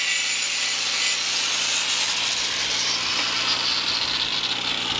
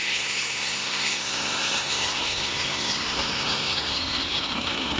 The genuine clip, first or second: first